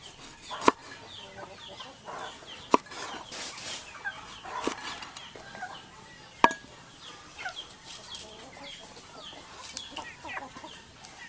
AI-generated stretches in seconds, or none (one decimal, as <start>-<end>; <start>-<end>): none